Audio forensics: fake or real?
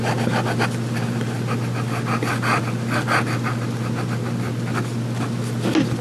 real